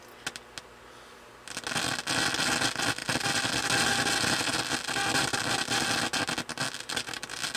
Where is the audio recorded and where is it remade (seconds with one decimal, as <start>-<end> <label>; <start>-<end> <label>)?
0.0-7.6 recorded

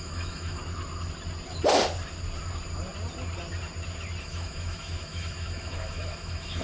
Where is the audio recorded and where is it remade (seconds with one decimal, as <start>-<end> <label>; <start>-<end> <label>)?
0.0-0.6 remade; 0.6-4.2 recorded; 4.2-6.6 remade